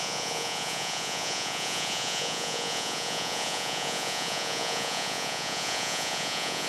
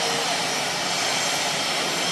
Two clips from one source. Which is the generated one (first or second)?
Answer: first